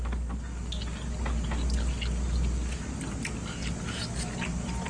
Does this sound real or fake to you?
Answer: real